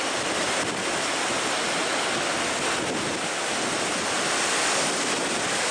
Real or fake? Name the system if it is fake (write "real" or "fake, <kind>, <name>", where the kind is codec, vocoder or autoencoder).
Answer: real